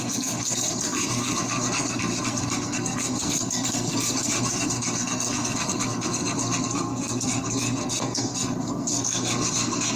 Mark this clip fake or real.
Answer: fake